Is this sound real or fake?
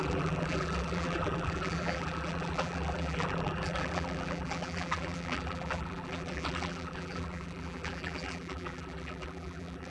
fake